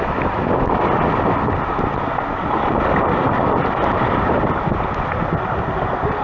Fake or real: real